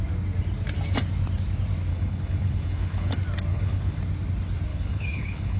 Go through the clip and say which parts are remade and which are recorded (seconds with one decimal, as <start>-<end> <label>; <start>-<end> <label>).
0.0-1.9 recorded; 1.9-3.1 remade; 3.1-3.5 recorded; 3.5-4.0 remade; 4.0-4.7 recorded; 4.7-5.6 remade